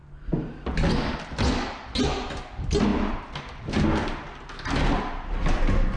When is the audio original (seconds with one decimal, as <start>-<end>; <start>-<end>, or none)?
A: 0.0-6.0